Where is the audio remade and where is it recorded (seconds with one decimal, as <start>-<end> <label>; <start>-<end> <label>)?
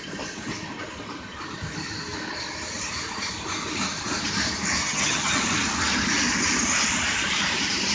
0.0-4.8 recorded; 4.8-5.4 remade; 5.4-7.9 recorded